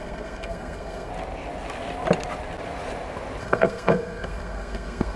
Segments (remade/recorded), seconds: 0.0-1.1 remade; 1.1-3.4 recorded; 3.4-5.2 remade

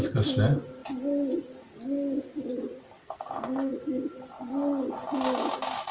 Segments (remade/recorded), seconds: 0.0-3.0 recorded; 3.0-3.7 remade; 3.7-5.9 recorded

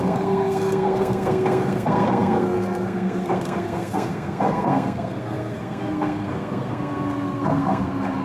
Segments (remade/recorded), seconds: 0.0-8.2 remade

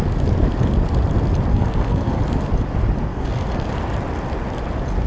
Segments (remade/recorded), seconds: 0.0-1.5 recorded; 1.5-2.2 remade; 2.2-3.1 recorded; 3.1-3.7 remade; 3.7-5.1 recorded

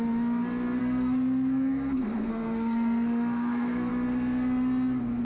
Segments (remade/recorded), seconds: 0.0-0.8 recorded; 0.8-3.9 remade; 3.9-5.2 recorded